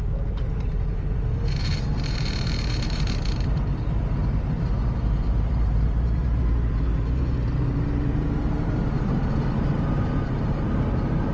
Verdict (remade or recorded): remade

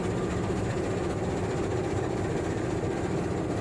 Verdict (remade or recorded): recorded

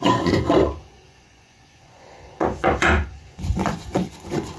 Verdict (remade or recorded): remade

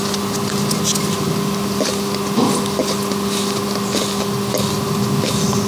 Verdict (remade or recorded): recorded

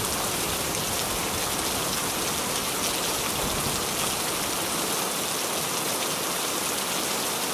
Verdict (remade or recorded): recorded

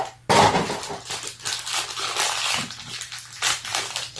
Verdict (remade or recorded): recorded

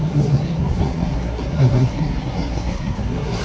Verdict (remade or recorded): remade